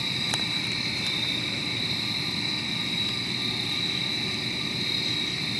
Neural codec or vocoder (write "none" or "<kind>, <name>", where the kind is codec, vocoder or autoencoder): vocoder, BigVGAN v2